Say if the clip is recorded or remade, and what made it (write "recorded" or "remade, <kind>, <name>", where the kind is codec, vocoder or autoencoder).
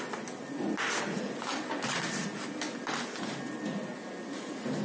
recorded